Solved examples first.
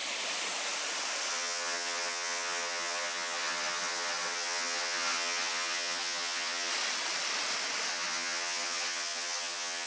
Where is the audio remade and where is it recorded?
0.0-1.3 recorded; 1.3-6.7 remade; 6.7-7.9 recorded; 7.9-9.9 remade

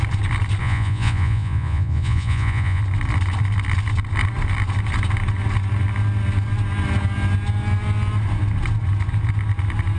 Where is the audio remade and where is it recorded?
0.0-0.6 recorded; 0.6-2.8 remade; 2.8-10.0 recorded

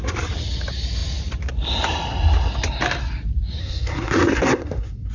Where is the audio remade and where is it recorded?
0.0-3.6 recorded; 3.6-5.1 remade

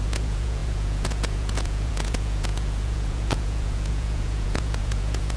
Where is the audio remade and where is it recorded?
0.0-5.4 remade